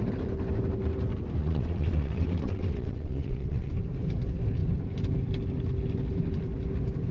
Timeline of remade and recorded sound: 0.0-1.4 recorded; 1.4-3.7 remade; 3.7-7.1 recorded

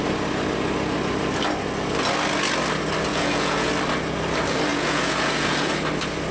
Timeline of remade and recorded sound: 0.0-3.1 recorded; 3.1-3.7 remade; 3.7-4.7 recorded; 4.7-5.7 remade; 5.7-6.3 recorded

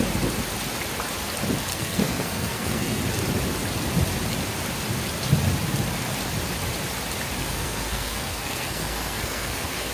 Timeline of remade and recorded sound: 0.0-1.7 recorded; 1.7-3.0 remade; 3.0-7.4 recorded; 7.4-9.9 remade

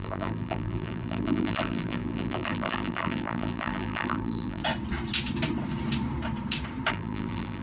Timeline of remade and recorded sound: 0.0-4.6 remade; 4.6-6.9 recorded; 6.9-7.6 remade